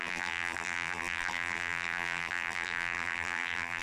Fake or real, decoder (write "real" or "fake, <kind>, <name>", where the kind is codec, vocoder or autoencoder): fake, vocoder, BigVGAN v2